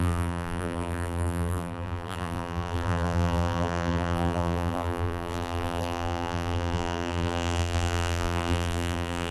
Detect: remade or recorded remade